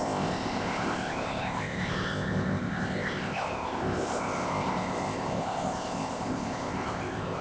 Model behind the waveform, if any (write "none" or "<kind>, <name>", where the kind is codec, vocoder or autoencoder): codec, ZipCodec